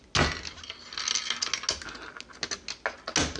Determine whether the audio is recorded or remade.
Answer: recorded